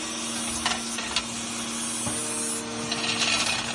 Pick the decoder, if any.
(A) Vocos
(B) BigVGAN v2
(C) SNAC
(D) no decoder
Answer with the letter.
D